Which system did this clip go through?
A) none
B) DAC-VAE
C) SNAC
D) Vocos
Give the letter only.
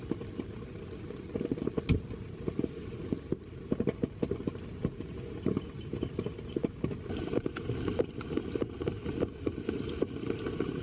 A